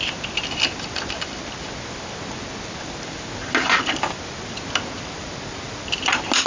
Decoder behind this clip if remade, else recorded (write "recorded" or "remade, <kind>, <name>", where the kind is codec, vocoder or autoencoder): recorded